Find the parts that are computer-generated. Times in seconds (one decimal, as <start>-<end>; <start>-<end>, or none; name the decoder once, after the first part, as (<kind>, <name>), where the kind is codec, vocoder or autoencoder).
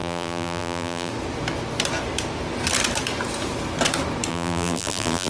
0.0-1.1 (vocoder, BigVGAN v2); 4.3-5.3